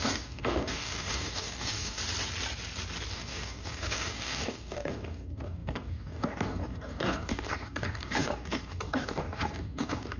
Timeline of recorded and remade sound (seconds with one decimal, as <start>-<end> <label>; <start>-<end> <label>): 0.0-2.0 remade; 2.0-3.1 recorded; 3.1-10.2 remade